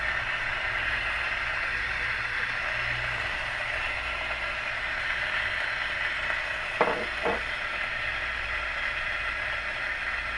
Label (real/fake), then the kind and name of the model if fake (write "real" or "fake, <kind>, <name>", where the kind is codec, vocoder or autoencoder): real